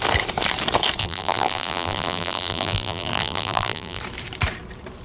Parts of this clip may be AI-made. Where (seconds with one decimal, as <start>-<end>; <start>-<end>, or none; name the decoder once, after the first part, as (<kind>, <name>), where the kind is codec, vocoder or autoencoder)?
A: 1.0-4.0 (vocoder, BigVGAN v2)